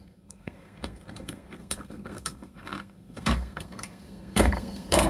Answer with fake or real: fake